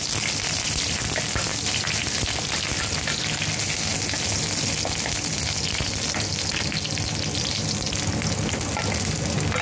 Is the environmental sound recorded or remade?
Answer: recorded